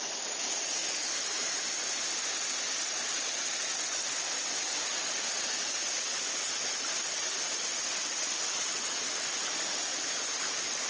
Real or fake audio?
real